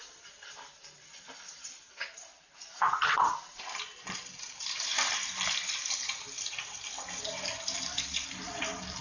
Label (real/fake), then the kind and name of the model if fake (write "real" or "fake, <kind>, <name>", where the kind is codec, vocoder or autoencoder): fake, vocoder, BigVGAN v2